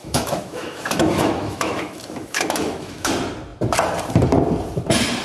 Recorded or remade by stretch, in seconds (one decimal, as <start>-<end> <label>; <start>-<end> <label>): 0.0-3.1 remade; 3.1-5.2 recorded